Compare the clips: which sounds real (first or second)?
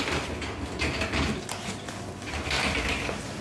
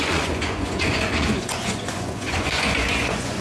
first